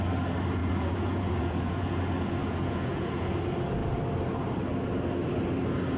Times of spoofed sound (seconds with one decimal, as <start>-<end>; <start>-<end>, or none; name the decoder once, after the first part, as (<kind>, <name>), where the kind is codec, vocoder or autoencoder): 0.6-2.0 (vocoder, Vocos); 2.4-3.3